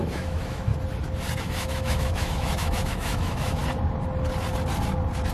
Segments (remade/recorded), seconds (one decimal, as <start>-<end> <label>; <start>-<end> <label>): 0.0-0.7 remade; 0.7-1.4 recorded; 1.4-3.6 remade; 3.6-5.3 recorded